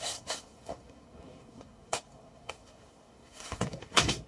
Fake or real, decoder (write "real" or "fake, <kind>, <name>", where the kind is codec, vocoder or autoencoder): fake, codec, SNAC